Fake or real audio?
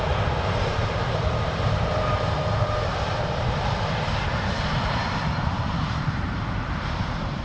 fake